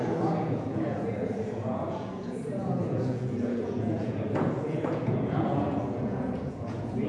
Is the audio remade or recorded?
remade